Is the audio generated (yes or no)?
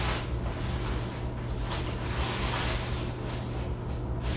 no